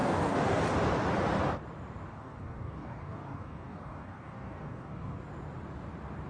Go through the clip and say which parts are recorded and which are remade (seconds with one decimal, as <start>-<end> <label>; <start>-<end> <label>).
0.0-0.6 remade; 0.6-2.1 recorded; 2.1-5.2 remade; 5.2-6.3 recorded